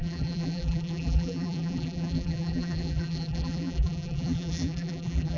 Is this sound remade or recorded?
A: remade